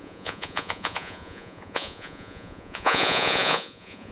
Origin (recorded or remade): remade